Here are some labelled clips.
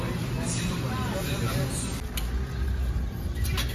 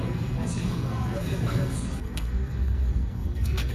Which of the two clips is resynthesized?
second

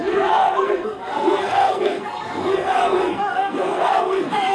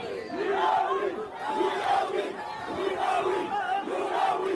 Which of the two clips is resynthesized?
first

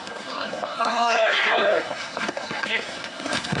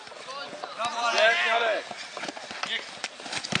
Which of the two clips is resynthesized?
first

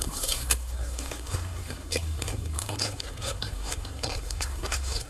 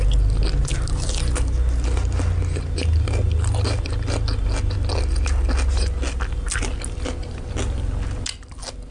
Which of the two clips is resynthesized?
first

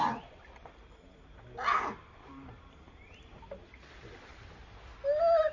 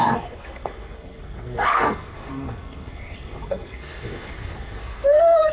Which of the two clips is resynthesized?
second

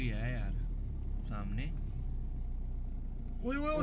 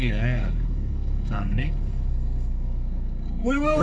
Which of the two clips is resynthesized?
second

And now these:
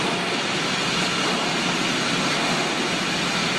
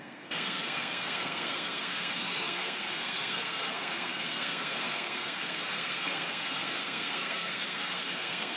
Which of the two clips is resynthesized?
second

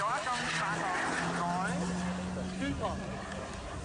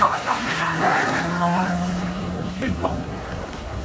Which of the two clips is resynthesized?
second